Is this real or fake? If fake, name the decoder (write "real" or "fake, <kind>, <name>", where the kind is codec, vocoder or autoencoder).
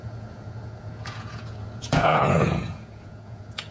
fake, vocoder, Vocos